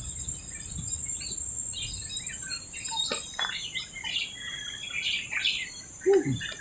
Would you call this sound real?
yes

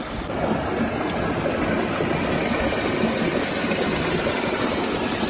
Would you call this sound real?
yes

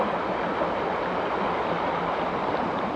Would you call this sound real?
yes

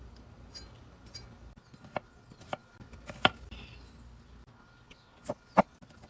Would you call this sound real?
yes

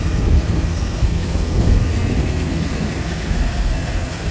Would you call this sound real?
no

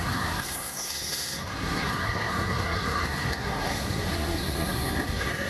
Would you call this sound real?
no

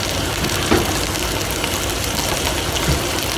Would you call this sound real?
yes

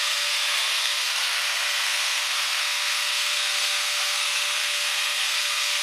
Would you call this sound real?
no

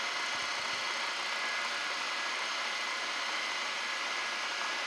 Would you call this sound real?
yes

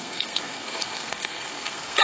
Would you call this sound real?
no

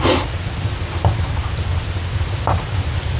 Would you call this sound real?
yes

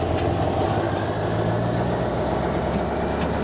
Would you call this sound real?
yes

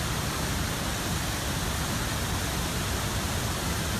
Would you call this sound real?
yes